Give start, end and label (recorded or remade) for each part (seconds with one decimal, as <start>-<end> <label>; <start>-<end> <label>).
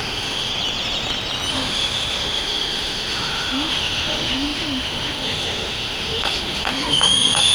0.0-0.5 remade; 0.5-1.5 recorded; 1.5-7.5 remade